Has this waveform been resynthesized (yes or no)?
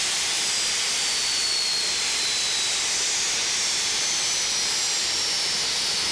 yes